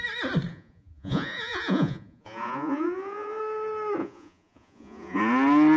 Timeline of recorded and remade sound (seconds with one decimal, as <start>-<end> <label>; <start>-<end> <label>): 0.0-0.5 recorded; 0.5-3.4 remade; 3.4-4.0 recorded; 4.0-5.2 remade; 5.2-5.8 recorded

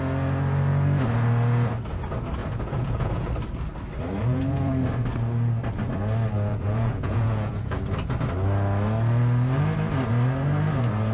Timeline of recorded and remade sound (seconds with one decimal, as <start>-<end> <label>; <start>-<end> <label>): 0.0-2.4 recorded; 2.4-3.3 remade; 3.3-4.2 recorded; 4.2-4.7 remade; 4.7-6.5 recorded; 6.5-7.8 remade; 7.8-11.1 recorded

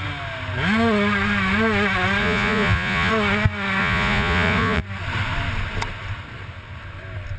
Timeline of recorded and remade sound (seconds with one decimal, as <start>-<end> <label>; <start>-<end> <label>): 0.0-2.2 recorded; 2.2-3.1 remade; 3.1-3.8 recorded; 3.8-4.8 remade; 4.8-7.4 recorded

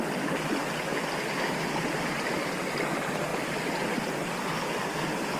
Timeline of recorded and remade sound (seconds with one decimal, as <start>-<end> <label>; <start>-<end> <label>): 0.0-5.4 recorded